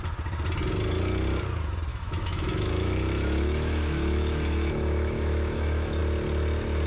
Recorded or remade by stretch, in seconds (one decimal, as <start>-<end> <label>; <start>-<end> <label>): 0.0-1.9 recorded; 1.9-6.0 remade; 6.0-6.9 recorded